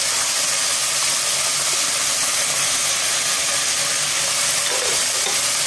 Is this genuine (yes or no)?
yes